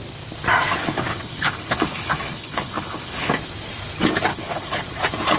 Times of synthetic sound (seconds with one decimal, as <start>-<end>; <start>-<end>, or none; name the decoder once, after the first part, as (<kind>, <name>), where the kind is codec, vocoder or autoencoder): 0.8-3.3 (codec, HILCodec); 4.3-4.8